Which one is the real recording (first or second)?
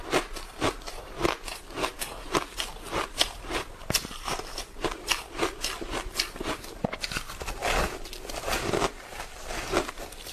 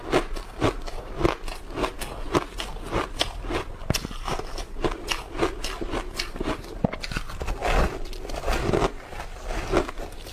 second